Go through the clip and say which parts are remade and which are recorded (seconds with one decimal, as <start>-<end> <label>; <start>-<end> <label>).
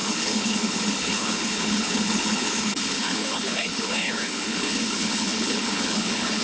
0.0-6.4 remade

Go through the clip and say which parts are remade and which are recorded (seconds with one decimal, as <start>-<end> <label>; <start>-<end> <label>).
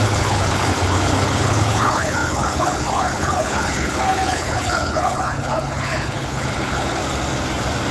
0.0-7.0 remade; 7.0-7.9 recorded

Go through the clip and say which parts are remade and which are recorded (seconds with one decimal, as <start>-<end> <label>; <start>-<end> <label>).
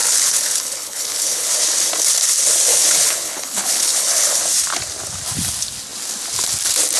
0.0-1.5 remade; 1.5-2.7 recorded; 2.7-4.4 remade; 4.4-7.0 recorded